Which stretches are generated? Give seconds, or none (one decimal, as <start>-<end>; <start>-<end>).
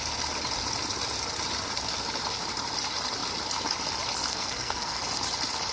4.3-5.0